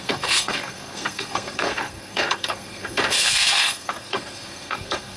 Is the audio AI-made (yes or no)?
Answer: yes